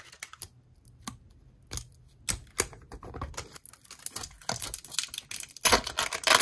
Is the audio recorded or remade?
recorded